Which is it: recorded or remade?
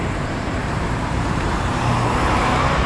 remade